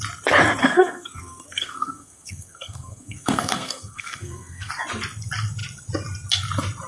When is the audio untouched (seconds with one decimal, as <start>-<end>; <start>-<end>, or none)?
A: 0.0-0.6; 4.7-6.9